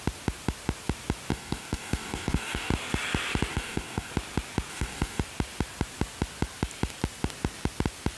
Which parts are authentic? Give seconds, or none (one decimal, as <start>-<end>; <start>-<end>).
0.0-1.3; 2.7-3.5; 4.1-4.7; 5.2-8.2